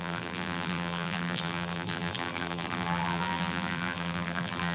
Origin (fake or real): fake